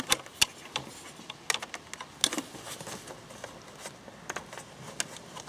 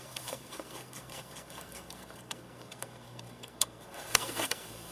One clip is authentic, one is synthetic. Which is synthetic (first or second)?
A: second